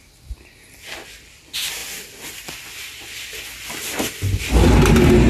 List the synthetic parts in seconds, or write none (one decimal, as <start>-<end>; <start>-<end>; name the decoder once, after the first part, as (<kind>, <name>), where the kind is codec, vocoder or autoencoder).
none

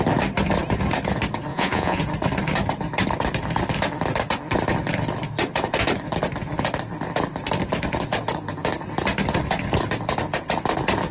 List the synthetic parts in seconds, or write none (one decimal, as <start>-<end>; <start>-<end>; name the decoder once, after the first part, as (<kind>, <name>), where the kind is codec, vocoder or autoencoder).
1.5-2.0 (vocoder, Vocos)

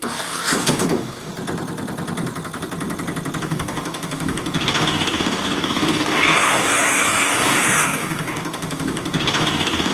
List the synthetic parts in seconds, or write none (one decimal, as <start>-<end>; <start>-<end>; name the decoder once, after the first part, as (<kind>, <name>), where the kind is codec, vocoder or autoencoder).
0.0-1.3 (codec, DAC); 3.4-9.9

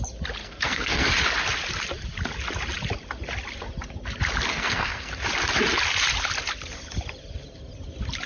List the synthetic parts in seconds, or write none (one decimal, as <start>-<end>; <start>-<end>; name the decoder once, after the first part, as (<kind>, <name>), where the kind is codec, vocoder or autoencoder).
0.4-1.1 (codec, SNAC); 4.5-5.1